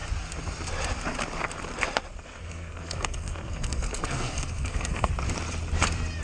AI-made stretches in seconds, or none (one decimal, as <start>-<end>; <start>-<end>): 2.1-5.1